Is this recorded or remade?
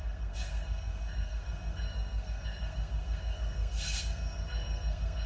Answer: remade